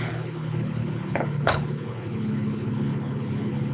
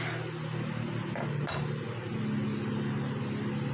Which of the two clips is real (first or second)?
second